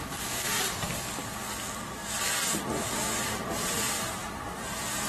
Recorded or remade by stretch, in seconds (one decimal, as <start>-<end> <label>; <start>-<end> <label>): 0.0-5.1 recorded